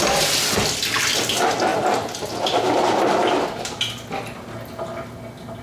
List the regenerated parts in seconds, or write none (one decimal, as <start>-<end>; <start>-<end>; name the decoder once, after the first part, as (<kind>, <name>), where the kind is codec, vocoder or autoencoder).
none